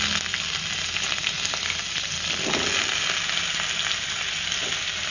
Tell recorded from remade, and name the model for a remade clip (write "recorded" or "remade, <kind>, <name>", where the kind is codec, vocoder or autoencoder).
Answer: recorded